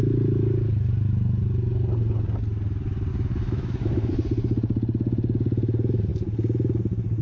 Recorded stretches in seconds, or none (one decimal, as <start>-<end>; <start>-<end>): 0.0-3.1; 4.1-7.2